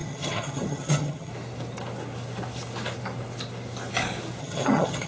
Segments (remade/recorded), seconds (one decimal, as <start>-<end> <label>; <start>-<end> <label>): 0.0-1.3 remade; 1.3-4.4 recorded; 4.4-5.1 remade